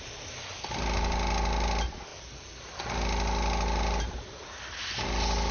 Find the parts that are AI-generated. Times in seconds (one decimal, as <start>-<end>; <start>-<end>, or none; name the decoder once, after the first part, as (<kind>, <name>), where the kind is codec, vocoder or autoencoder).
none